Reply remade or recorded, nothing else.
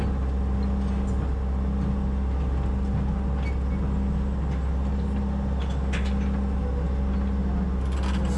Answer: recorded